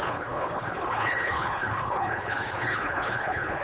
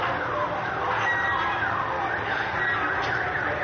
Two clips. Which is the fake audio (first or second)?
first